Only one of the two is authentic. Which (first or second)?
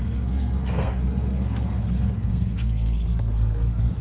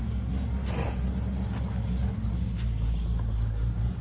second